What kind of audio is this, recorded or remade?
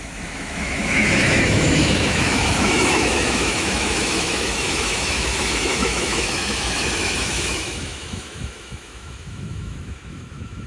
remade